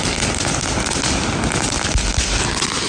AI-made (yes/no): no